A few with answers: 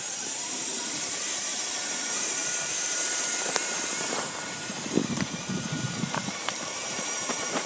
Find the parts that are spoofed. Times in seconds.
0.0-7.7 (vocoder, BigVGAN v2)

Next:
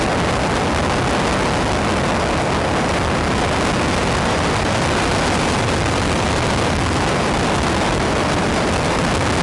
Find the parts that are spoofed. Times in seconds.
4.0-9.0 (vocoder, BigVGAN v2)

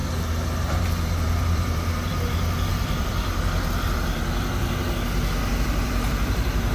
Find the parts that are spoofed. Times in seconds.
0.6-6.7 (vocoder, BigVGAN v2)